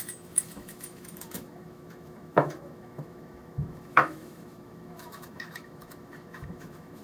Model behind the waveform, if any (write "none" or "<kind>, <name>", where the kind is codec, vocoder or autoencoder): autoencoder, DAC-VAE